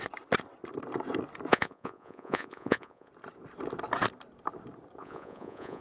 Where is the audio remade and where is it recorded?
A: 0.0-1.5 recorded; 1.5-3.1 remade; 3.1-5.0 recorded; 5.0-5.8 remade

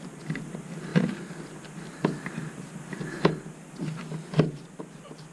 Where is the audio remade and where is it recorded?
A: 0.0-5.3 recorded

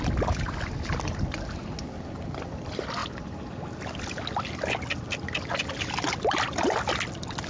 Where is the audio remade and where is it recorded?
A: 0.0-7.5 recorded

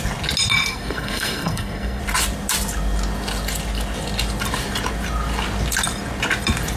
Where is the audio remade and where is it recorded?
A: 0.0-0.7 recorded; 0.7-2.0 remade; 2.0-6.8 recorded

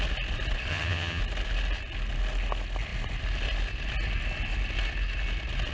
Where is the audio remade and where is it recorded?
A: 0.0-0.7 recorded; 0.7-1.2 remade; 1.2-5.7 recorded

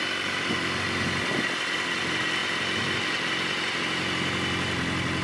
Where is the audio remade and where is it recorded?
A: 0.0-5.2 recorded

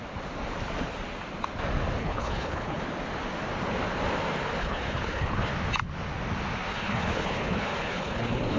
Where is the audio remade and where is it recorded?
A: 0.0-2.0 recorded; 2.0-2.8 remade; 2.8-4.6 recorded; 4.6-5.5 remade; 5.5-6.7 recorded; 6.7-8.6 remade